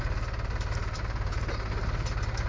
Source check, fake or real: real